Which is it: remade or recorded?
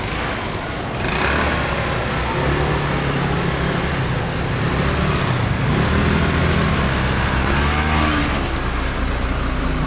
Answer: recorded